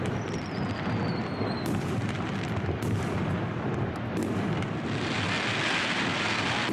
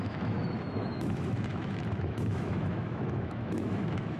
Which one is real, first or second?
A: first